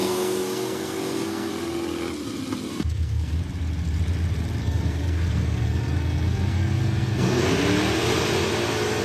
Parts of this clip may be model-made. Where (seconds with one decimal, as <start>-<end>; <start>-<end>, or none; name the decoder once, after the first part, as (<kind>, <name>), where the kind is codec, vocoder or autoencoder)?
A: 0.0-1.5 (codec, SNAC); 2.7-3.4; 4.6-7.5